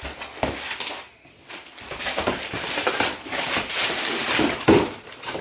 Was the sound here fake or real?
fake